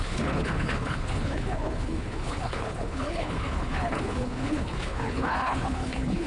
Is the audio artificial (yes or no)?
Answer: yes